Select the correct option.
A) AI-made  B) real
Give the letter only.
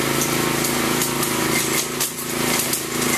B